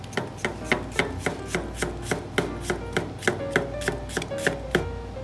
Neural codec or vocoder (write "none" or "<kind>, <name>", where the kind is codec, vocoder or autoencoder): none